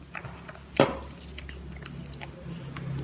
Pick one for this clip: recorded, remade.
recorded